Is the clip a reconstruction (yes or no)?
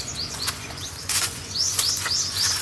yes